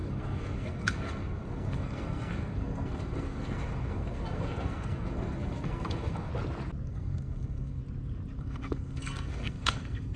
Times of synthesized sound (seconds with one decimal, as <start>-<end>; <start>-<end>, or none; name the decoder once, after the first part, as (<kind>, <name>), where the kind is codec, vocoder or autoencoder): 0.0-6.3 (codec, SNAC); 6.9-7.8; 8.4-10.2